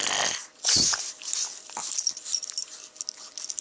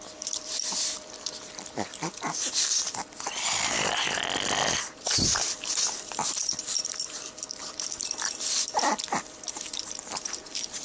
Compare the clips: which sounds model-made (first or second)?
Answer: second